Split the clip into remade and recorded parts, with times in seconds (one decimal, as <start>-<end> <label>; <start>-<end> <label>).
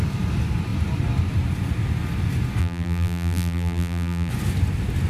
0.0-2.6 recorded; 2.6-4.3 remade; 4.3-5.1 recorded